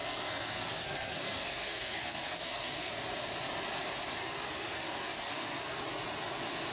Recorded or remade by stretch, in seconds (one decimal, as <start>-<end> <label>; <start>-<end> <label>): 0.0-2.9 remade; 2.9-4.2 recorded; 4.2-5.8 remade; 5.8-6.7 recorded